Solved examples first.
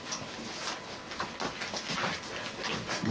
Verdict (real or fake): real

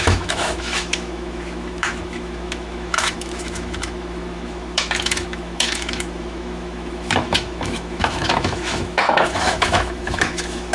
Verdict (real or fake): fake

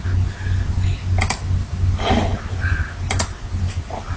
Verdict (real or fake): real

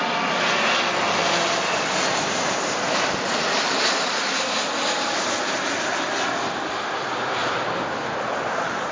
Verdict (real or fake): real